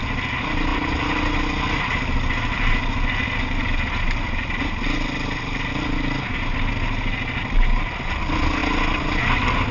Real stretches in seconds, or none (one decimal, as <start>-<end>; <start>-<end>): 0.0-9.7